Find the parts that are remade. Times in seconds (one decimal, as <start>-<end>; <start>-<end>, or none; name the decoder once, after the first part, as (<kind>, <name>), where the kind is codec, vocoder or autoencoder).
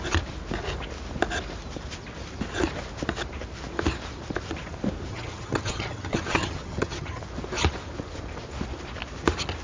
5.1-7.2 (vocoder, HiFi-GAN)